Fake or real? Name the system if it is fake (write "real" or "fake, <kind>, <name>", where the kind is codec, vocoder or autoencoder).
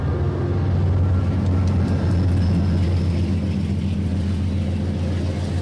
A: real